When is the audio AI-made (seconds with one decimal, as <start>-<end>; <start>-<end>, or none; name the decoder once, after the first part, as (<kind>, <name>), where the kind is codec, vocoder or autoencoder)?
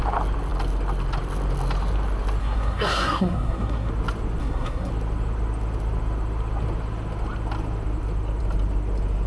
2.4-3.9 (codec, SNAC); 4.4-4.9